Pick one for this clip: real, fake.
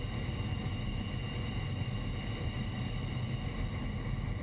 real